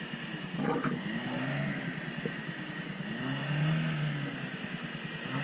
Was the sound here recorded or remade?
recorded